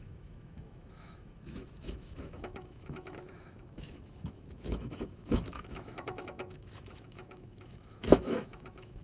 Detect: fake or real fake